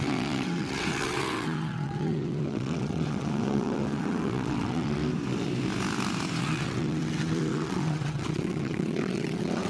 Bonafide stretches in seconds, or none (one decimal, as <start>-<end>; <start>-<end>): 5.0-6.4